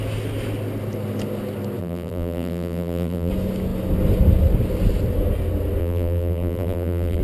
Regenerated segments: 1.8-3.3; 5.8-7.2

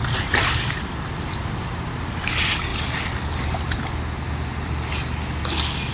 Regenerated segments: none

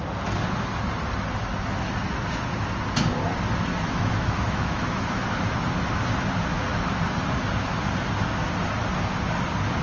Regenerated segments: 3.7-5.2

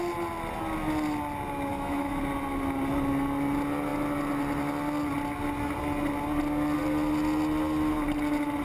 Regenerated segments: 1.7-2.2

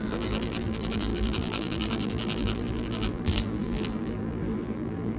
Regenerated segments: 0.0-5.2

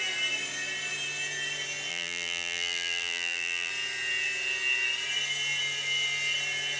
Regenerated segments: 1.9-3.7